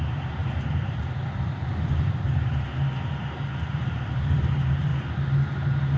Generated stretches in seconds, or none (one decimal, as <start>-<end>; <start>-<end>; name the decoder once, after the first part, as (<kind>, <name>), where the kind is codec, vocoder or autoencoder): 0.0-2.7 (vocoder, BigVGAN v2); 3.6-4.9